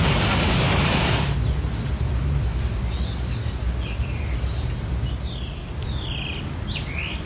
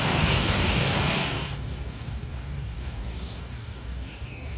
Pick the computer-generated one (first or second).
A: second